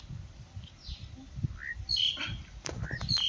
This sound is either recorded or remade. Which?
recorded